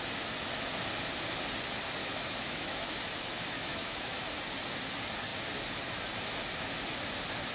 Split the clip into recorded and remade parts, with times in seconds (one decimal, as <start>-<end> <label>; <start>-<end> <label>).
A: 0.0-2.0 recorded; 2.0-4.2 remade; 4.2-7.5 recorded